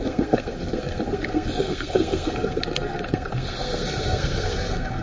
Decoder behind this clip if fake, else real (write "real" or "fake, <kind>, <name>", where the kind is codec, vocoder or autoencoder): fake, codec, SNAC